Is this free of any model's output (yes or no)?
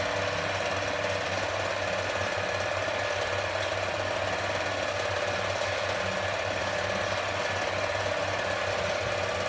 yes